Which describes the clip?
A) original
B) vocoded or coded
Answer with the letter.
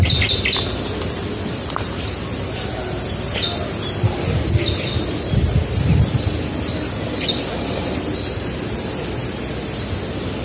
A